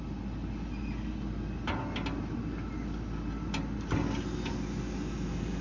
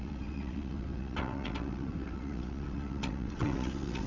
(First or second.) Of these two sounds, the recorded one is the first